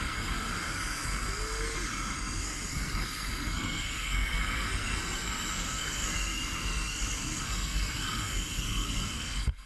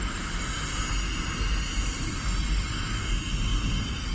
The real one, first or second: second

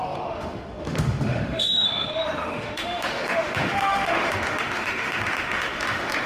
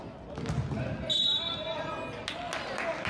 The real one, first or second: second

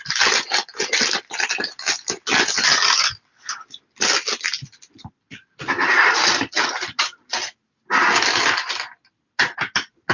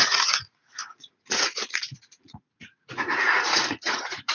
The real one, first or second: first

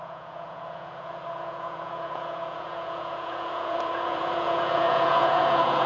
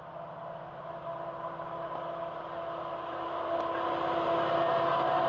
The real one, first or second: second